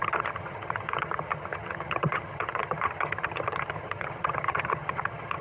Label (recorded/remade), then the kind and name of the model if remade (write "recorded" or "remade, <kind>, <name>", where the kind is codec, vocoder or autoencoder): remade, vocoder, HiFi-GAN